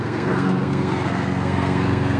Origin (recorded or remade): remade